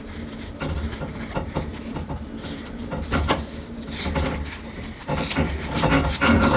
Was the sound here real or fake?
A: fake